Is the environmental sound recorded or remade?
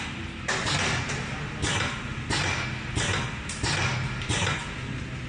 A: recorded